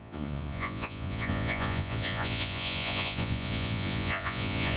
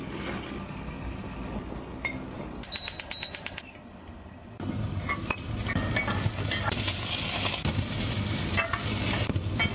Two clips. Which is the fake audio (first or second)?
first